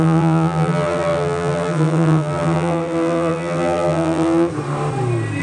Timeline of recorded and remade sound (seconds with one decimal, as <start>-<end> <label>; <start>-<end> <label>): 0.0-4.5 remade; 4.5-5.4 recorded